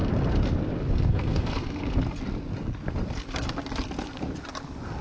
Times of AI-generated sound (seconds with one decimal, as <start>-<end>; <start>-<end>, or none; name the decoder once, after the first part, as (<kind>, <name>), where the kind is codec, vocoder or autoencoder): 0.9-1.8 (codec, SNAC)

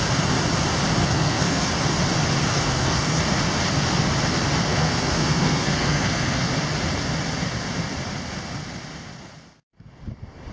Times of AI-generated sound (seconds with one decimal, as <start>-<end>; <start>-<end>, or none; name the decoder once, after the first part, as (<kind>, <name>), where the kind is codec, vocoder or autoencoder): 1.0-1.7 (codec, SNAC); 2.5-3.2; 4.7-6.5

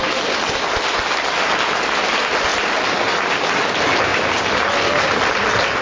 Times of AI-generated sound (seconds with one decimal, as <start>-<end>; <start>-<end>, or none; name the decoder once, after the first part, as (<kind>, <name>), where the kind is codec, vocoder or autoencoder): none

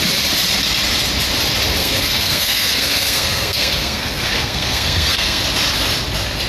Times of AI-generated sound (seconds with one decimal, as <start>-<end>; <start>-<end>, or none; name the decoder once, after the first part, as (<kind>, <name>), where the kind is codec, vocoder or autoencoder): 1.8-5.4 (codec, SNAC)

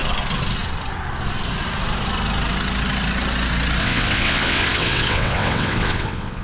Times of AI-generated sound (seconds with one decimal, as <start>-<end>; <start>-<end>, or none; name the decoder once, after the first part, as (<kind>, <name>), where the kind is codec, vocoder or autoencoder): 3.8-6.4 (vocoder, WaveNeXt)

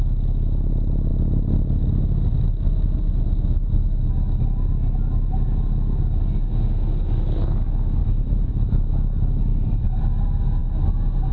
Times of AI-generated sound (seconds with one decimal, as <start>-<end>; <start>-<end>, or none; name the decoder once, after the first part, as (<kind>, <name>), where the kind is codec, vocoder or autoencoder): 8.0-8.9 (vocoder, BigVGAN v2); 9.5-10.0